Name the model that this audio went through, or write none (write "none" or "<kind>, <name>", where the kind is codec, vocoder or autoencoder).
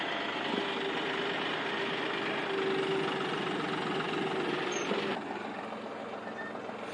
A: none